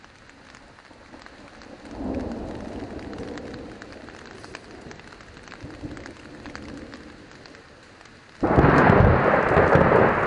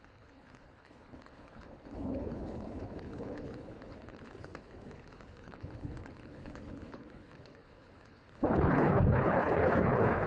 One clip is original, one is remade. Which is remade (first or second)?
second